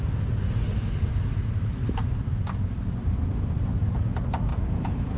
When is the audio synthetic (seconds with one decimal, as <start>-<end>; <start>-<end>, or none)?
0.7-3.8; 4.5-5.2